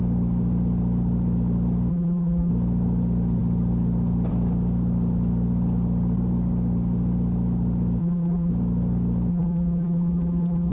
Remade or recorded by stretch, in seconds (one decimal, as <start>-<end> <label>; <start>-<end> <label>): 0.0-1.9 recorded; 1.9-2.5 remade; 2.5-8.0 recorded; 8.0-8.5 remade; 8.5-9.3 recorded; 9.3-10.7 remade